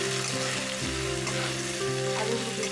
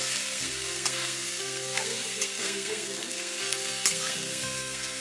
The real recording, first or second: first